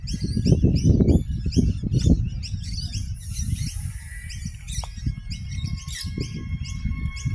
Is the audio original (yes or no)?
yes